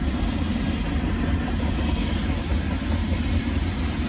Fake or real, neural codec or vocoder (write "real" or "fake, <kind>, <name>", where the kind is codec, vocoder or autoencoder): real